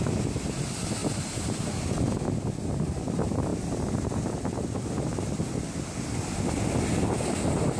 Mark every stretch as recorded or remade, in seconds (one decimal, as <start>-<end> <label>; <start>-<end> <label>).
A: 0.0-1.0 recorded; 1.0-1.8 remade; 1.8-7.8 recorded